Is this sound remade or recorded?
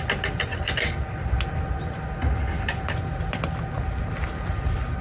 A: recorded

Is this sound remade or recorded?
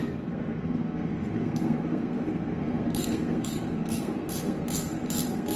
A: remade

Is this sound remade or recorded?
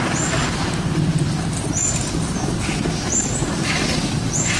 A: recorded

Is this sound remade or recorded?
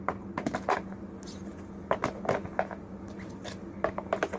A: recorded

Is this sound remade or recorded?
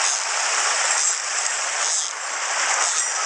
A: recorded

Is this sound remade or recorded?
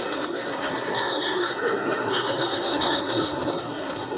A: remade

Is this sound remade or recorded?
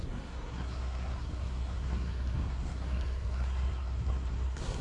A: remade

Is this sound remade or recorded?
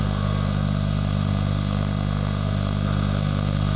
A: remade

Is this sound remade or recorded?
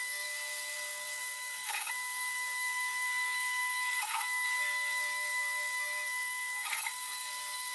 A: remade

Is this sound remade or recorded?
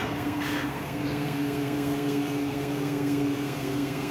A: remade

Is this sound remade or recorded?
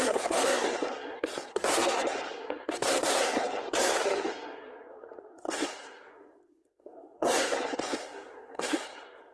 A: remade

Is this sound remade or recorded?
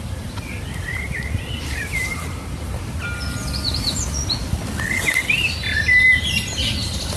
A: recorded